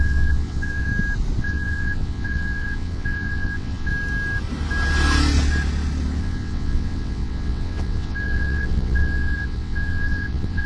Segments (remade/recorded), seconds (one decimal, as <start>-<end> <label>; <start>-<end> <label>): 0.0-0.9 remade; 0.9-1.4 recorded; 1.4-3.9 remade; 3.9-6.2 recorded; 6.2-10.7 remade